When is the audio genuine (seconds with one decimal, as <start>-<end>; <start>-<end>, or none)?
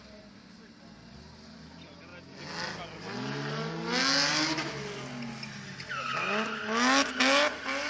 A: 0.0-7.9